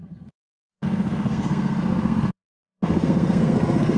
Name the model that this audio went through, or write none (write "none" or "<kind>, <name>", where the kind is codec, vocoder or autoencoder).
codec, SNAC